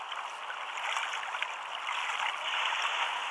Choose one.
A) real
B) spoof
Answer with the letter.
A